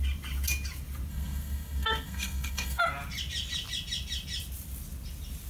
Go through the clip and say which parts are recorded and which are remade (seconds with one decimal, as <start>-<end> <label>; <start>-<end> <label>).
0.0-1.1 recorded; 1.1-2.8 remade; 2.8-5.5 recorded